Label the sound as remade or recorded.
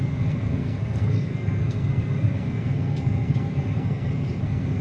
remade